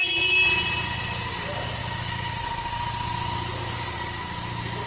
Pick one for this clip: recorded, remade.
recorded